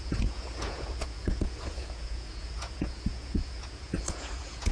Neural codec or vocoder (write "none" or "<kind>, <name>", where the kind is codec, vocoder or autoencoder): vocoder, Vocos